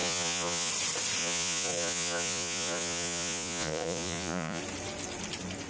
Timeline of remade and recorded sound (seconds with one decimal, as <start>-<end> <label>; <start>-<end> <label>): 0.0-0.7 remade; 0.7-1.2 recorded; 1.2-4.6 remade; 4.6-5.7 recorded